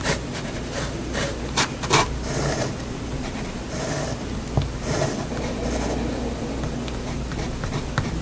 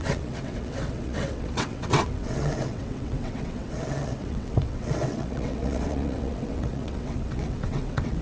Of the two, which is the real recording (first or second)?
first